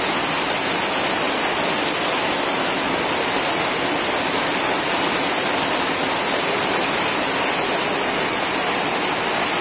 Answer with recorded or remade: recorded